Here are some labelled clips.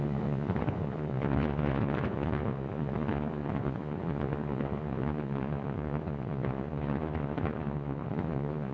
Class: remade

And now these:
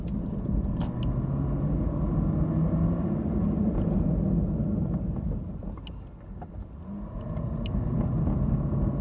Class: recorded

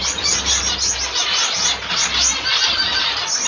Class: recorded